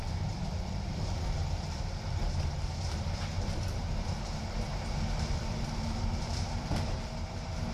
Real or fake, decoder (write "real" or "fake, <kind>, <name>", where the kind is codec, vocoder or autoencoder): fake, vocoder, BigVGAN v2